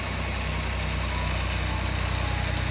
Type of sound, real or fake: real